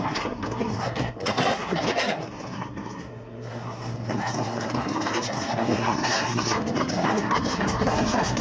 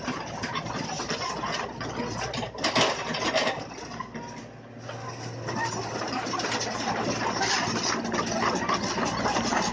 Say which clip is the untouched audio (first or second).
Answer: second